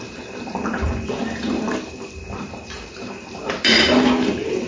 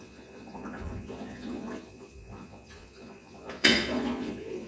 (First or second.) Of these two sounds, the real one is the first